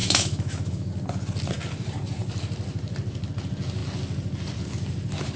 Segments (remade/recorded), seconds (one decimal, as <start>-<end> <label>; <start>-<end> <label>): 0.0-0.9 remade; 0.9-5.4 recorded